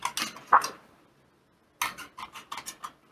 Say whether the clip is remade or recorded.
recorded